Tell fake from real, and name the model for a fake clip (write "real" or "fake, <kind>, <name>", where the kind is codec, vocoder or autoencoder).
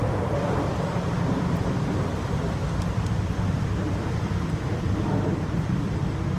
fake, vocoder, BigVGAN v2